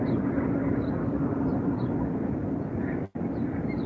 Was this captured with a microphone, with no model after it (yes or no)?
yes